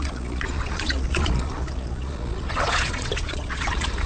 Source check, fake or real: fake